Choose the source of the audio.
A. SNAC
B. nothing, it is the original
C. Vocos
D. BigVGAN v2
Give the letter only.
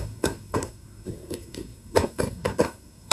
A